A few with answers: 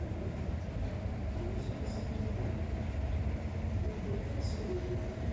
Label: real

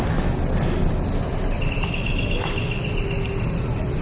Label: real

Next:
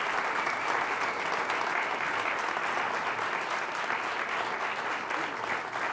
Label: real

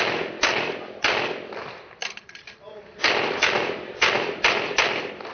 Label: real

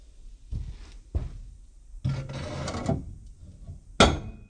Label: real